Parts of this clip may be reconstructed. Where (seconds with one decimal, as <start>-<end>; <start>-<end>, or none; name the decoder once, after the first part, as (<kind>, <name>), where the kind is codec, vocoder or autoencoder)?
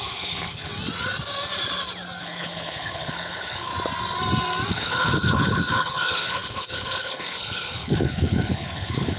0.0-0.7 (codec, HILCodec); 2.2-3.7; 4.7-9.2